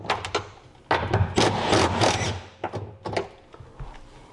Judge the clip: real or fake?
real